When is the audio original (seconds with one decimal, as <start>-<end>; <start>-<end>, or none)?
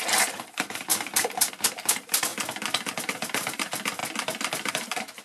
2.3-2.9; 4.0-4.7